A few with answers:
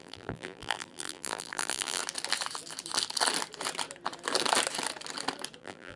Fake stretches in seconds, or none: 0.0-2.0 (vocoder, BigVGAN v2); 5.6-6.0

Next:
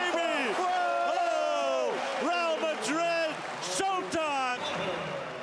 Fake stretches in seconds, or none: none

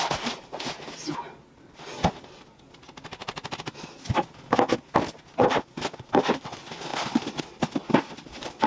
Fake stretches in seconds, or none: none

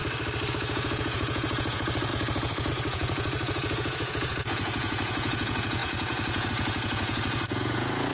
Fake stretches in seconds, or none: 0.5-8.1 (vocoder, Vocos)

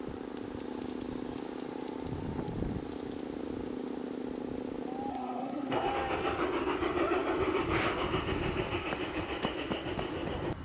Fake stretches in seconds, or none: 5.1-5.9 (codec, SNAC)